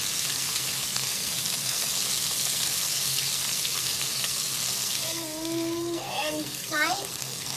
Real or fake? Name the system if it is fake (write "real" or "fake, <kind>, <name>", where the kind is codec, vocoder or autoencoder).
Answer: fake, codec, SNAC